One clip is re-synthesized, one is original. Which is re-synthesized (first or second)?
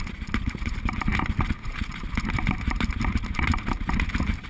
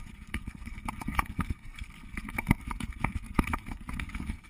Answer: second